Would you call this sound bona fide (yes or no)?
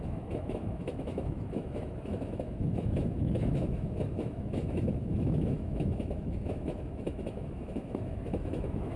no